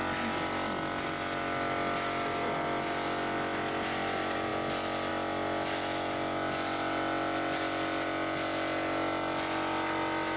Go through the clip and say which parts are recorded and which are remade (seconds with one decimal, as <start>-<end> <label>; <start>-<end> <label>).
0.0-10.4 recorded